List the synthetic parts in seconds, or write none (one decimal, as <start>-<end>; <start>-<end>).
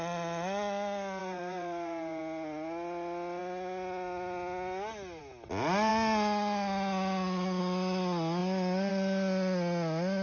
1.2-2.2